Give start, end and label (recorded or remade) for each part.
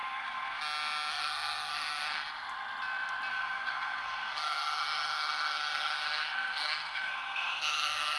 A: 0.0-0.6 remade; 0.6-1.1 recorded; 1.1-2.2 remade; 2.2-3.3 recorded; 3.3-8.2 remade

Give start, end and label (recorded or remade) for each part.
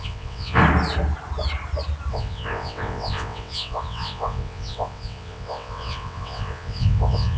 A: 0.0-0.6 remade; 0.6-2.1 recorded; 2.1-7.4 remade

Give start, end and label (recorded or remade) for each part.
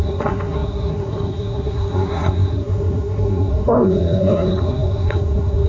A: 0.0-5.7 remade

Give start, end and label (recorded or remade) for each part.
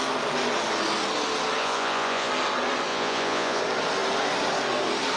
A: 0.0-1.6 recorded; 1.6-2.3 remade; 2.3-2.9 recorded; 2.9-3.6 remade; 3.6-5.2 recorded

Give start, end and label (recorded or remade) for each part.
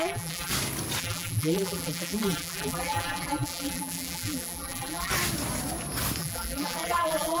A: 0.0-0.5 remade; 0.5-1.0 recorded; 1.0-5.1 remade; 5.1-6.2 recorded; 6.2-7.4 remade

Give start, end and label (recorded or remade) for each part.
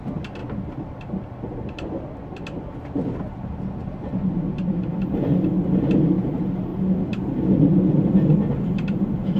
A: 0.0-0.4 recorded; 0.4-3.6 remade; 3.6-9.4 recorded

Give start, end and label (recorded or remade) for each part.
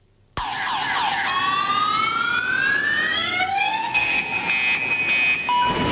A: 0.0-3.1 recorded; 3.1-4.2 remade; 4.2-5.9 recorded